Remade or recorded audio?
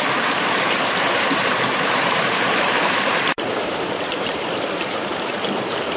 remade